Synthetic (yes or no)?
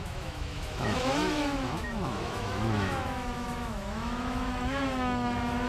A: yes